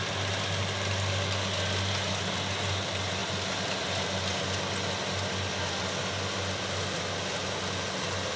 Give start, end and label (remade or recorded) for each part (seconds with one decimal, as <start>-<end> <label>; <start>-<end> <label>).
0.0-8.4 recorded